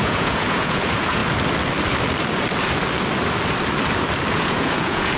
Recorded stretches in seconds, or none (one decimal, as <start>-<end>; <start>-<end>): 1.2-4.3